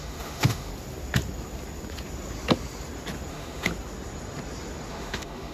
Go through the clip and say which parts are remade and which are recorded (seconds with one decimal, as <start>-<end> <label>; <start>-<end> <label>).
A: 0.0-0.7 remade; 0.7-3.3 recorded; 3.3-3.7 remade; 3.7-4.9 recorded; 4.9-5.5 remade